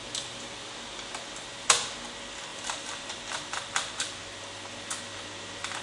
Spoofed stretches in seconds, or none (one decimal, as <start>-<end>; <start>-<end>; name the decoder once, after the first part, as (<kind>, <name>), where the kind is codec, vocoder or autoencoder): 2.5-3.1 (vocoder, BigVGAN v2)